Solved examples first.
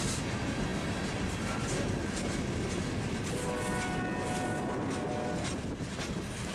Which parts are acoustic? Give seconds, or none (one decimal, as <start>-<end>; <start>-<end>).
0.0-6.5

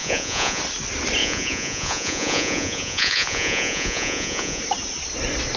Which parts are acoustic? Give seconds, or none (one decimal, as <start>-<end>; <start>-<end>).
0.6-1.2; 4.6-5.6

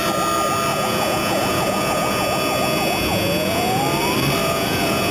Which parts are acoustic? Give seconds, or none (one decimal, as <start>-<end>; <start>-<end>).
0.0-0.7; 3.8-4.4

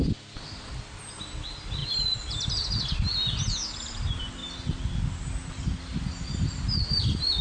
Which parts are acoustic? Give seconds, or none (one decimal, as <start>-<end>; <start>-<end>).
0.0-7.4

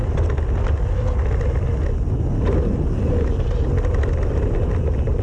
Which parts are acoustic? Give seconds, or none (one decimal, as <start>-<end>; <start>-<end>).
0.0-5.2

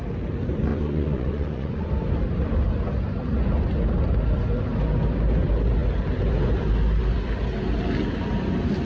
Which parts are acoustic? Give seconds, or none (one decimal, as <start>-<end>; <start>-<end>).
0.0-0.7; 1.9-8.9